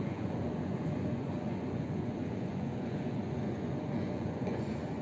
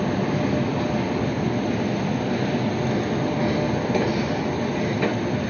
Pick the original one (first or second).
second